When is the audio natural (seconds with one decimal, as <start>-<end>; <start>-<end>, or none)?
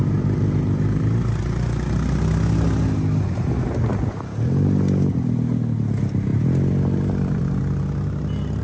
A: 0.0-6.3; 7.6-8.6